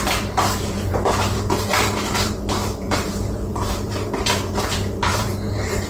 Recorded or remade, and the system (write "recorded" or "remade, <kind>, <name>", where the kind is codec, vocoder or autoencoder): remade, vocoder, BigVGAN v2